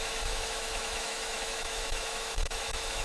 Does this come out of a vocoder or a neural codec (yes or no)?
yes